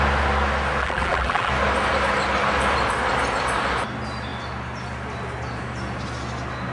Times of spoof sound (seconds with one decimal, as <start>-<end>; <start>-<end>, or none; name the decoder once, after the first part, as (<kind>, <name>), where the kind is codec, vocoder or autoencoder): 0.8-1.5 (vocoder, BigVGAN v2)